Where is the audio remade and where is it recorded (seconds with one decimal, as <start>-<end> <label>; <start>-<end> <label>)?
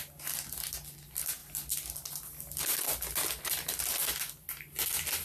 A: 0.0-5.2 recorded